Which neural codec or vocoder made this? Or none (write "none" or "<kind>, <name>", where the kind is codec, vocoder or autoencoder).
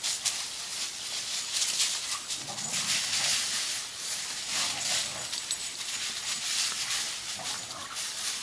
none